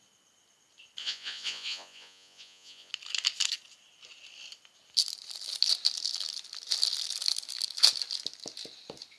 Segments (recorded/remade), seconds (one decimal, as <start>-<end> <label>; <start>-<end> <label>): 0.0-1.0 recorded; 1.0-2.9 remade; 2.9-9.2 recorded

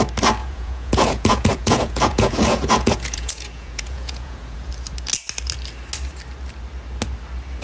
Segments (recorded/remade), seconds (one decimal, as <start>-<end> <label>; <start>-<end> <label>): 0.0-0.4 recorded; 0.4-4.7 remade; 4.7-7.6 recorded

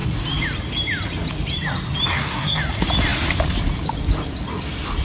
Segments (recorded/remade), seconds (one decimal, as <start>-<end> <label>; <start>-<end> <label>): 0.0-2.1 recorded; 2.1-2.6 remade; 2.6-5.0 recorded

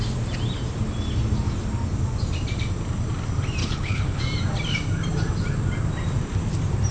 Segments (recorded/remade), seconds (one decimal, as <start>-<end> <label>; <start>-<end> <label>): 0.0-3.6 recorded; 3.6-4.2 remade; 4.2-6.9 recorded